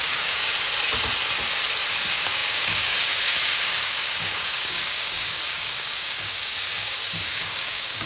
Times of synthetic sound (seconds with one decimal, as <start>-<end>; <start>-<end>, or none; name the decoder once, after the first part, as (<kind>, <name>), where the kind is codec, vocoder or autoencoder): 0.0-0.5 (codec, DAC); 1.9-8.1